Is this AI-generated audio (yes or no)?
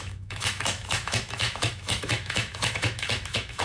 yes